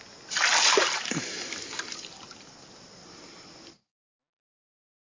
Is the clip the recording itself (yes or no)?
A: yes